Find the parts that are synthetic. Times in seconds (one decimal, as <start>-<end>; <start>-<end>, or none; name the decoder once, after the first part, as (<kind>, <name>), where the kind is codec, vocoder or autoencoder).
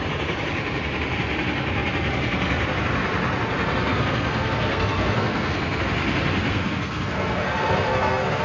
3.9-5.8 (codec, SNAC); 6.5-8.4